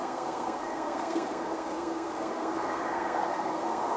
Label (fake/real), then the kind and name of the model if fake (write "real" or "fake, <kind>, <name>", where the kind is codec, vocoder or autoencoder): fake, codec, SNAC